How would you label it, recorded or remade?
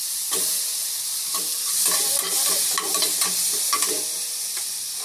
recorded